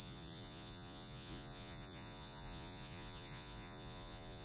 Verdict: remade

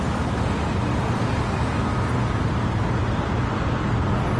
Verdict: recorded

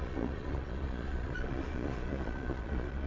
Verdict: remade